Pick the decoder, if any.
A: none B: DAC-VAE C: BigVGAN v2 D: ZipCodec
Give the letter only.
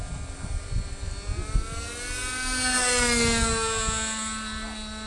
A